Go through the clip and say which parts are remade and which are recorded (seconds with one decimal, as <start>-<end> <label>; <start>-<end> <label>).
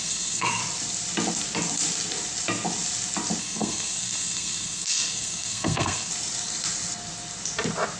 0.0-0.6 remade; 0.6-3.4 recorded; 3.4-6.1 remade; 6.1-8.0 recorded